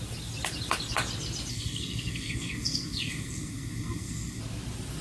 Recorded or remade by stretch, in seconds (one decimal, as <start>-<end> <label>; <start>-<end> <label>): 0.0-1.5 recorded; 1.5-4.4 remade; 4.4-5.0 recorded